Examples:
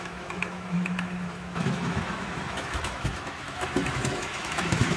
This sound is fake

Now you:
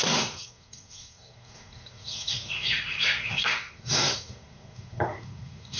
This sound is fake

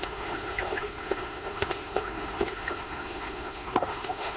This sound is fake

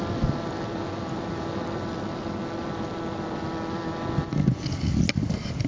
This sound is real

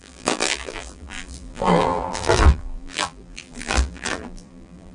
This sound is fake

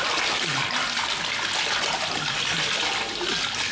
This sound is real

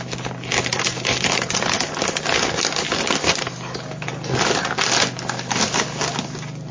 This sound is real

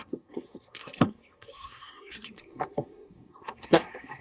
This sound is fake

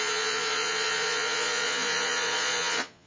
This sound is fake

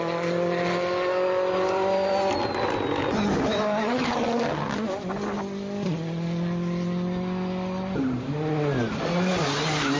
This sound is real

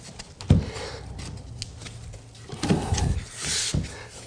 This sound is real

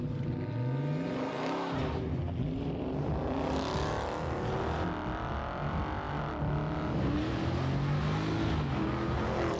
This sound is real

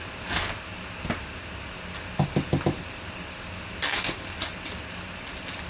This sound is real